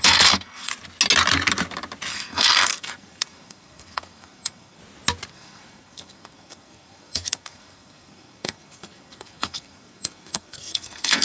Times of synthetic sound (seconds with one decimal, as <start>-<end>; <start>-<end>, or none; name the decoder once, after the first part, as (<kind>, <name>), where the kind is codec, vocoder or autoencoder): 0.0-0.7 (codec, SNAC); 2.1-4.8; 5.3-11.2